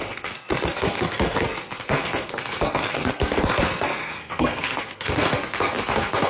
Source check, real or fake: fake